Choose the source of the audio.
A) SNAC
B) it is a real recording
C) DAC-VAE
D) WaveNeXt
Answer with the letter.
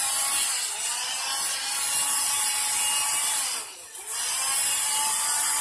B